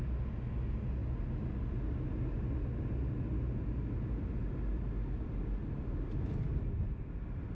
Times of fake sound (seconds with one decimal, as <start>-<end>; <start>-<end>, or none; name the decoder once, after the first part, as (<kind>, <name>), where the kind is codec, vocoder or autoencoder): none

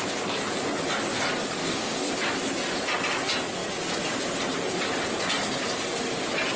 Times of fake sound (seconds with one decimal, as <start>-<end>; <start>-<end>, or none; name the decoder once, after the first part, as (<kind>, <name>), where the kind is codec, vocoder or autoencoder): 1.6-2.1 (codec, DAC)

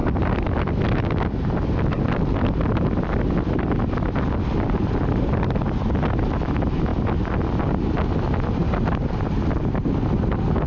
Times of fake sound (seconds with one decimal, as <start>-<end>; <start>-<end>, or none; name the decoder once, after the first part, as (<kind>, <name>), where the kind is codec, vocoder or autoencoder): none

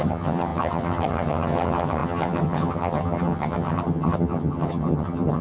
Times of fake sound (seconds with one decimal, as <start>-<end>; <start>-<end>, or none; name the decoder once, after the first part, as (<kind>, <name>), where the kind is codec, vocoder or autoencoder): 0.0-5.4 (vocoder, HiFi-GAN)

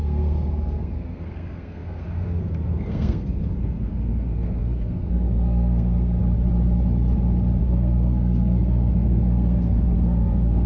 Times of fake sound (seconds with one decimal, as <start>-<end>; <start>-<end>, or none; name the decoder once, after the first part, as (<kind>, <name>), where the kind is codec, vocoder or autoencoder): 0.0-6.2 (codec, SNAC); 7.6-10.7

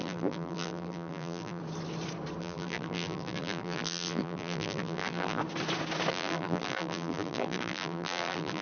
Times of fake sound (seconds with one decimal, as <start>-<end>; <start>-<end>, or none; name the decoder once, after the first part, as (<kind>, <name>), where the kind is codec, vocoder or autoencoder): 0.0-1.6 (vocoder, BigVGAN v2); 2.4-5.4; 6.1-8.6

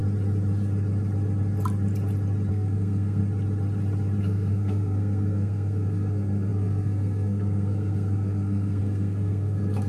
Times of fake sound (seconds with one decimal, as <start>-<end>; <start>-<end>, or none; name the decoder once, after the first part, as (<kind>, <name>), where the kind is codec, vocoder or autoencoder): 2.5-3.2 (codec, SNAC); 4.2-9.9